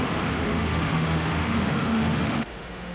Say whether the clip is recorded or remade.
remade